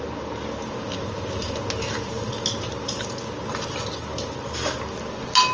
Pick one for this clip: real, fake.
real